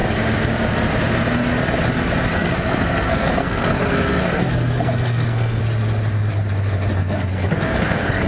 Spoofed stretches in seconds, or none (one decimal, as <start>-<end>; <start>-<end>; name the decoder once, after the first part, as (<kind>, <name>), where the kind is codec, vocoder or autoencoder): 2.3-5.6 (codec, SNAC); 7.0-8.3